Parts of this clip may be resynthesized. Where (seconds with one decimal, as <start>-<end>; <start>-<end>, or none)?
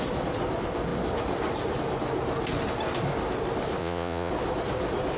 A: 3.8-4.3